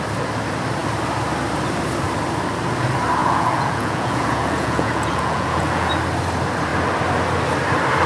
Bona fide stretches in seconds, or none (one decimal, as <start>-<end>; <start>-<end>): 0.0-3.2; 5.9-8.1